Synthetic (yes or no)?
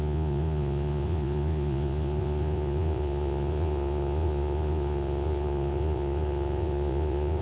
yes